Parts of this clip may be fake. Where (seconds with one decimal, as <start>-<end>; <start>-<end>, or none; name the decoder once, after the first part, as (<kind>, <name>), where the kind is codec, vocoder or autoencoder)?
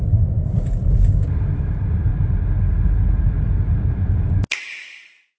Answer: none